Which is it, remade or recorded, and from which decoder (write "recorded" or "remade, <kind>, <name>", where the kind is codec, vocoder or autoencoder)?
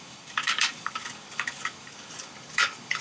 remade, codec, DAC